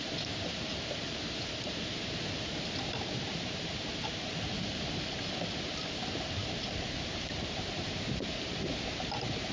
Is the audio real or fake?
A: fake